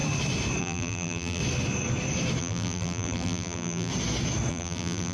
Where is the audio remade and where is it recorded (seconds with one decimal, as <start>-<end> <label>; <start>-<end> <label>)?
0.0-0.6 recorded; 0.6-1.4 remade; 1.4-2.4 recorded; 2.4-3.9 remade; 3.9-4.5 recorded; 4.5-5.1 remade